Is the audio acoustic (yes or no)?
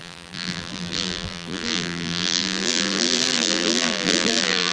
no